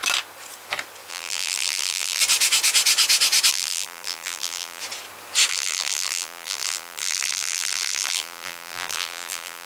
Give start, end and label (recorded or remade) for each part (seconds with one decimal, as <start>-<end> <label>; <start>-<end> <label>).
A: 0.0-1.1 recorded; 1.1-2.2 remade; 2.2-3.5 recorded; 3.5-4.8 remade; 4.8-5.5 recorded; 5.5-9.7 remade